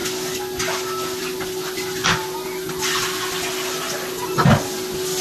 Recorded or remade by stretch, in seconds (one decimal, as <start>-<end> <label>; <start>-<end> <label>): 0.0-5.2 recorded